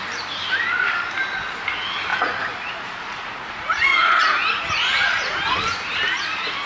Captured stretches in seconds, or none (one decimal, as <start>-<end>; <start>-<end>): 0.0-2.1; 5.6-6.7